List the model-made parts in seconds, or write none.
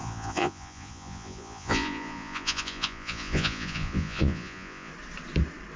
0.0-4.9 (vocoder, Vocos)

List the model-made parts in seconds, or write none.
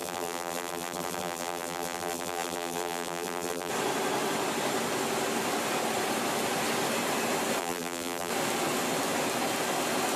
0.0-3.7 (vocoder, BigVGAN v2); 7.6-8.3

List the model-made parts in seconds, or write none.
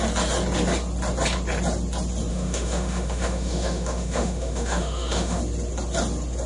2.3-5.4 (autoencoder, DAC-VAE)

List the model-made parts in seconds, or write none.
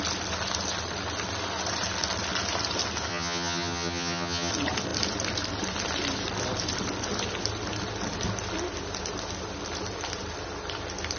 3.1-4.5 (vocoder, HiFi-GAN)